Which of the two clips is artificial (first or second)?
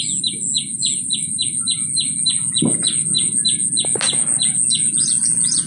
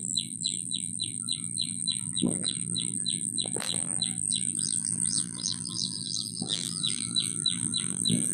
second